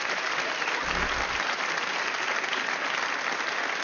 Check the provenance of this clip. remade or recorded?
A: recorded